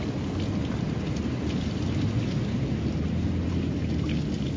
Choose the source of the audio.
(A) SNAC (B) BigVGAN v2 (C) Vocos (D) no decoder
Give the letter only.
D